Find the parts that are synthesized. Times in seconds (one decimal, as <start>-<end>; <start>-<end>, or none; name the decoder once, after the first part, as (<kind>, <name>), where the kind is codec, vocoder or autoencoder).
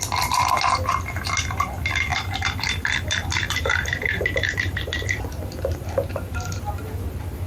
2.1-6.6 (vocoder, BigVGAN v2)